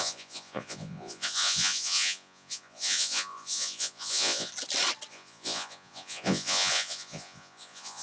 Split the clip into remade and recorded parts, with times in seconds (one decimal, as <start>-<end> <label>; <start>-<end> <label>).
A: 0.0-4.5 remade; 4.5-5.1 recorded; 5.1-8.0 remade